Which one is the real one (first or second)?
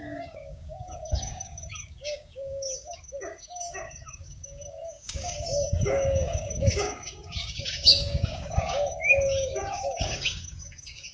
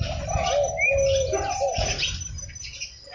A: second